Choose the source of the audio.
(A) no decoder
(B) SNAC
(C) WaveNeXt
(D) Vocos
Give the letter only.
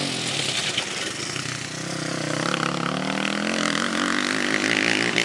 A